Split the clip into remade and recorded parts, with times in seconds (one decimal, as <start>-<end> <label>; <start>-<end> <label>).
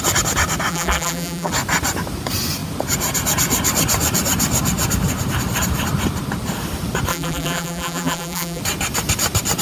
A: 0.0-0.7 recorded; 0.7-1.5 remade; 1.5-7.1 recorded; 7.1-8.6 remade; 8.6-9.6 recorded